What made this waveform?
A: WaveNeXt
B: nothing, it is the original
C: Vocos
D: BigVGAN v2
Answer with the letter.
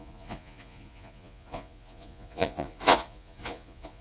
C